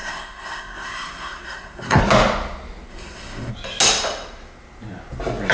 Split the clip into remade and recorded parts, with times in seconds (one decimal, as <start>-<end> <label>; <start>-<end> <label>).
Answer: 0.0-2.0 remade; 2.0-2.9 recorded; 2.9-3.5 remade; 3.5-5.5 recorded